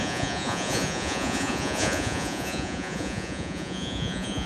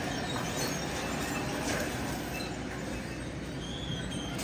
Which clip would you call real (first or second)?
second